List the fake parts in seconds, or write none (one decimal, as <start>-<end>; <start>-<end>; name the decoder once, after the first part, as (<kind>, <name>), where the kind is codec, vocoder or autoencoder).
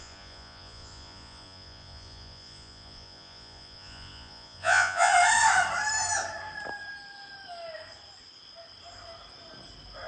0.0-5.1 (vocoder, Vocos)